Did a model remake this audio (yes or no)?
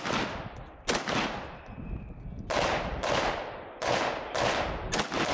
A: no